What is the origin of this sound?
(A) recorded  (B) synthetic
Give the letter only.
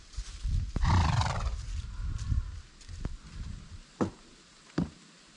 A